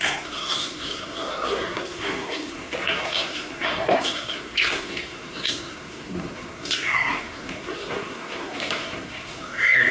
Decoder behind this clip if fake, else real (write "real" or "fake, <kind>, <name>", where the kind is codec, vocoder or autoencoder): fake, codec, SNAC